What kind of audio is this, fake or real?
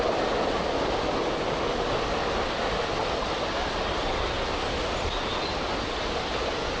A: real